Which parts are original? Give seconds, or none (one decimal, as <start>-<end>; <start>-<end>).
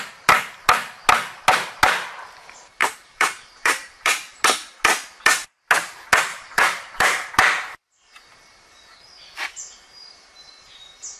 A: 0.0-2.8; 4.4-6.3; 7.3-11.2